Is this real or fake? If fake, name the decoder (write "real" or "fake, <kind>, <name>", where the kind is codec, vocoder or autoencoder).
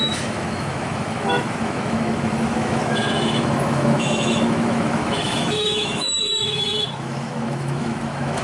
fake, autoencoder, DAC-VAE